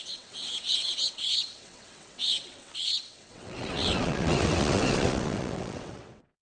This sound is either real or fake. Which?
fake